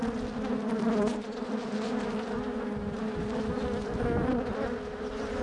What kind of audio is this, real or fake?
real